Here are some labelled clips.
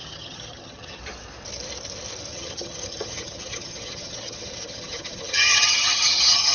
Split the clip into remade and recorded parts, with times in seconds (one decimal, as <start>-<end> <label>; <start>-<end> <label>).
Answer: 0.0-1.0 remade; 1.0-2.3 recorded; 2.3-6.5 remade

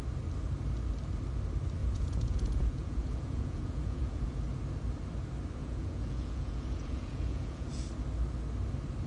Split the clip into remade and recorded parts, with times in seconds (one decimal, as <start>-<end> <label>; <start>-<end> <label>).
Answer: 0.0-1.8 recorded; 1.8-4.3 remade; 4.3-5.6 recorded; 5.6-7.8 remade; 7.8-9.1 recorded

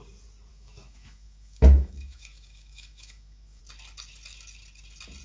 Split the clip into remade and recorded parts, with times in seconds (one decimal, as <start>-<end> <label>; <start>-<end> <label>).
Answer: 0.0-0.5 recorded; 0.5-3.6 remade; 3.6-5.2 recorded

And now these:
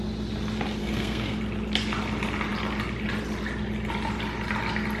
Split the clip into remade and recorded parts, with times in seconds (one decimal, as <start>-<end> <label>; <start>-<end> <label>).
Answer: 0.0-0.8 recorded; 0.8-1.4 remade; 1.4-5.0 recorded

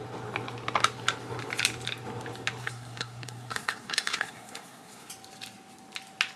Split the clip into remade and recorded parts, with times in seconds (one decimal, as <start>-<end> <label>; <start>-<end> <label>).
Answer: 0.0-2.6 recorded; 2.6-5.1 remade; 5.1-6.4 recorded

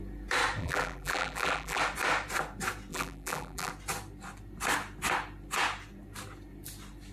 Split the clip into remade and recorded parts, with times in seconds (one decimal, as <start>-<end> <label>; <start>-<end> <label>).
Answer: 0.0-0.6 recorded; 0.6-1.8 remade; 1.8-2.9 recorded; 2.9-3.7 remade; 3.7-7.1 recorded